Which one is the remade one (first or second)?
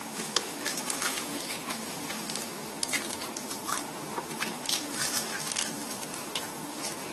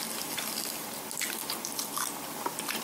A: first